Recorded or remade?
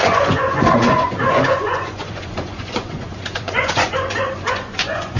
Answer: remade